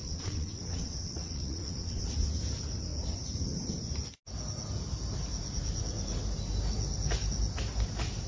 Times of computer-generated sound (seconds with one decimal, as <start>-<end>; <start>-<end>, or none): 0.0-2.0